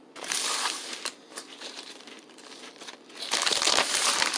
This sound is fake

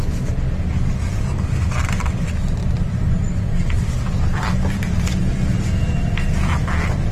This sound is real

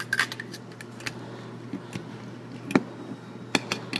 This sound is real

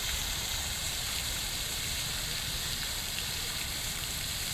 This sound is fake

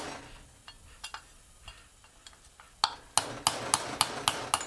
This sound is real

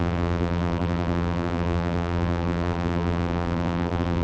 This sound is fake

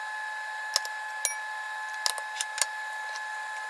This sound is real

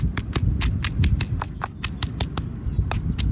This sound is fake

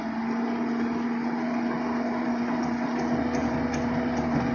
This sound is real